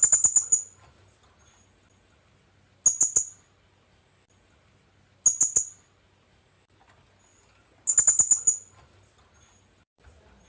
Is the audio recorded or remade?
recorded